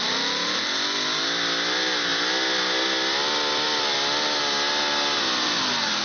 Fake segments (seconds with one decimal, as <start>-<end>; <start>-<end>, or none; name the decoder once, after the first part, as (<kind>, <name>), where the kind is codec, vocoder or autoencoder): none